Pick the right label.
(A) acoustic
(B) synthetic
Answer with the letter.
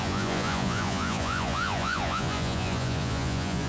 B